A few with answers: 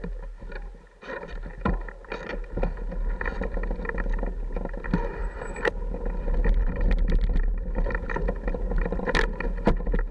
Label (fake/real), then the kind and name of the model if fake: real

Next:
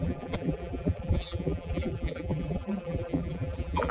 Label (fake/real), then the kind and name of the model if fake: fake, vocoder, BigVGAN v2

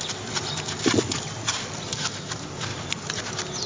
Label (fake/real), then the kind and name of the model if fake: real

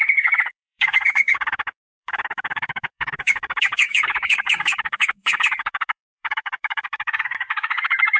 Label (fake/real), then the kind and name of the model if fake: fake, codec, DAC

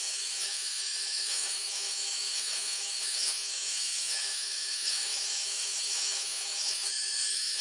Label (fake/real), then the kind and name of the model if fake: fake, autoencoder, DAC-VAE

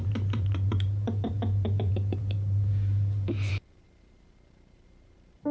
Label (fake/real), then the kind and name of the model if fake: fake, vocoder, BigVGAN v2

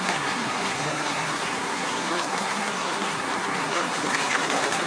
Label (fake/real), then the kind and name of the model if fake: fake, codec, SNAC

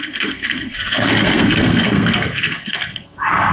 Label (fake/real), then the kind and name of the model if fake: fake, codec, SNAC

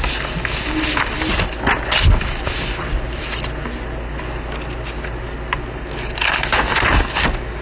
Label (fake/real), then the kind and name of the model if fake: real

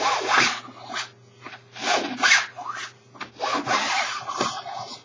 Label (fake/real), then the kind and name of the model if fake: real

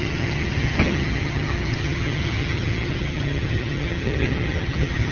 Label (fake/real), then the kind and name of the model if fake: fake, vocoder, HiFi-GAN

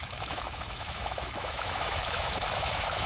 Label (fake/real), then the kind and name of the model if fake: fake, autoencoder, DAC-VAE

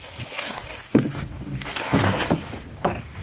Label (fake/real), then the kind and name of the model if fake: fake, codec, DAC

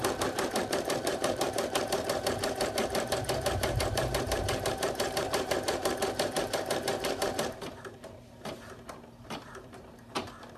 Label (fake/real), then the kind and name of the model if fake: fake, vocoder, BigVGAN v2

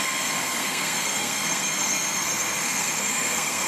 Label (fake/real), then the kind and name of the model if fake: fake, codec, SNAC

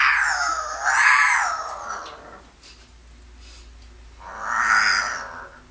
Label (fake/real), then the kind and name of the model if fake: real